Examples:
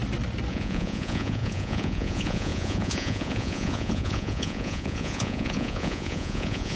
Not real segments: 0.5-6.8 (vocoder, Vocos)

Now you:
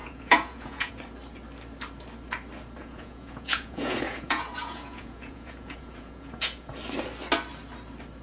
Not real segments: 0.0-0.9 (vocoder, Vocos); 2.8-6.7

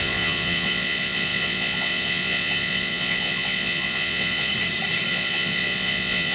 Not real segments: 0.0-4.5 (vocoder, Vocos); 5.1-6.3

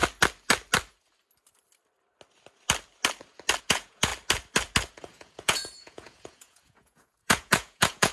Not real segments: 3.6-4.1 (vocoder, Vocos); 4.9-8.1

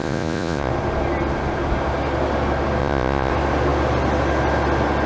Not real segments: 0.0-0.7 (vocoder, Vocos); 2.8-3.3

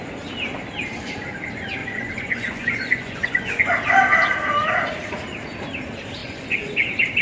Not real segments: 1.8-3.7 (vocoder, Vocos); 6.2-6.7

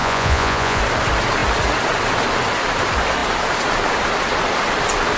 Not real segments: 0.0-0.8 (vocoder, Vocos)

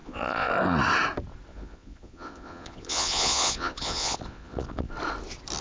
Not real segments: 0.0-0.5 (vocoder, Vocos); 1.5-4.9